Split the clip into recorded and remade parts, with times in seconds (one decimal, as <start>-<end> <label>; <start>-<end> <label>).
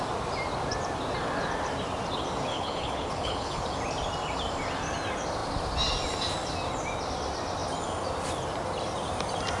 0.0-2.5 recorded; 2.5-3.6 remade; 3.6-9.6 recorded